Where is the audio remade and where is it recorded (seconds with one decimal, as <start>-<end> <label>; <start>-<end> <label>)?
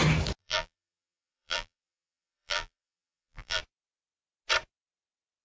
0.0-0.4 recorded; 0.4-3.6 remade; 3.6-5.4 recorded